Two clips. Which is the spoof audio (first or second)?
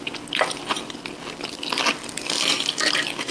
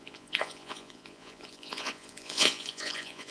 second